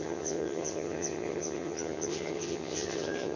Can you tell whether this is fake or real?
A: fake